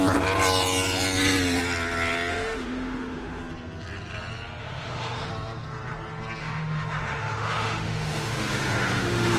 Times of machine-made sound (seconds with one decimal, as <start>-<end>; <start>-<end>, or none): 2.3-3.4; 4.6-5.3; 6.4-9.4